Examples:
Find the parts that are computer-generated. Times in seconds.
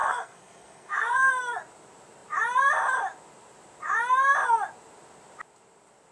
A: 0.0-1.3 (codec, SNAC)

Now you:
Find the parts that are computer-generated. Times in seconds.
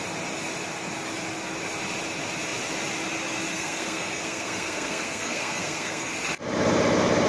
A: 3.5-6.1 (codec, SNAC)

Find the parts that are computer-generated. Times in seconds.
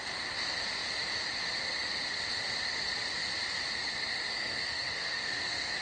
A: 4.3-5.8 (codec, SNAC)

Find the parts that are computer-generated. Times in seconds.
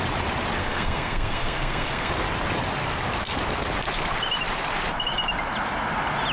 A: 0.6-2.1 (codec, SNAC)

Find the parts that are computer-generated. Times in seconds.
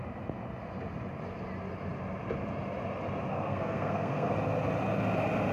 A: 3.3-4.3 (codec, SNAC)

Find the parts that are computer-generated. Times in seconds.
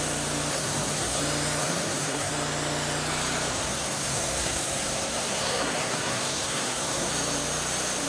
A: 0.5-1.2 (codec, SNAC); 1.6-2.3; 3.5-7.1